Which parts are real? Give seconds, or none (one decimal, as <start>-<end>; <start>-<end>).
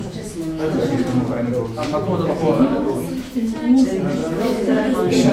0.7-1.9; 3.5-4.2; 4.8-5.3